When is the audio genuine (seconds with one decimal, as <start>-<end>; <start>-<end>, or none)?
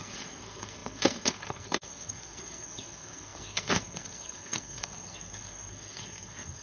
none